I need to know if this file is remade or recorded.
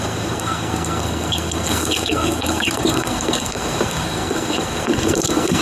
remade